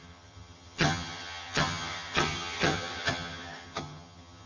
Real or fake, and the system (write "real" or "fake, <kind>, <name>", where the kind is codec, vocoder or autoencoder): fake, vocoder, HiFi-GAN